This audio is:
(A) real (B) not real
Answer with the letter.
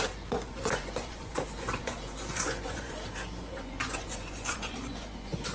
B